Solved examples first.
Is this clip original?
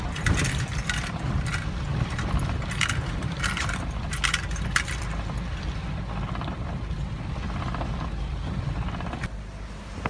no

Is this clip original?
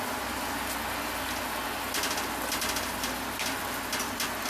yes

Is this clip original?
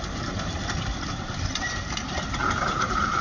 no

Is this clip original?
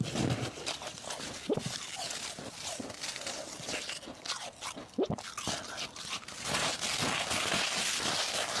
yes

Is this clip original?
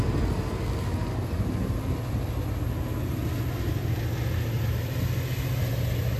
yes